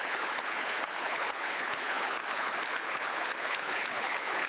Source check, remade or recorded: remade